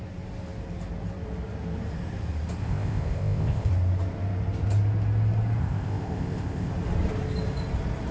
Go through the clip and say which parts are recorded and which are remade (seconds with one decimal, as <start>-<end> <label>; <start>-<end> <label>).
0.0-2.6 recorded; 2.6-3.7 remade; 3.7-5.6 recorded; 5.6-6.7 remade; 6.7-8.1 recorded